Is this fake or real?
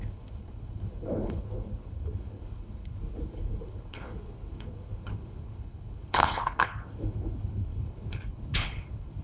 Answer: fake